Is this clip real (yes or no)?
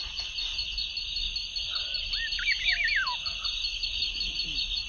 yes